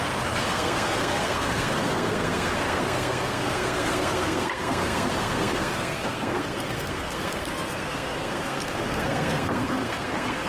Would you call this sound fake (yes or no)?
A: yes